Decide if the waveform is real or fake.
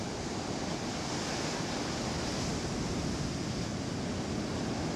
real